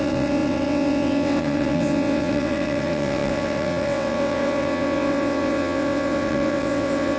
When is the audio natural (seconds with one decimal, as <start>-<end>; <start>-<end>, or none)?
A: none